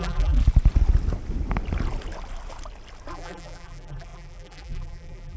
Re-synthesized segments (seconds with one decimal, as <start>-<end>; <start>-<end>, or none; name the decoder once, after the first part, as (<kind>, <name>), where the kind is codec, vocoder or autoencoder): 0.0-0.4 (vocoder, BigVGAN v2); 3.1-5.4